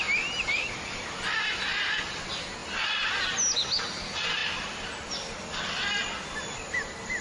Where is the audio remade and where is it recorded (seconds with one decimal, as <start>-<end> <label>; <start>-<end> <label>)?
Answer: 0.0-7.2 recorded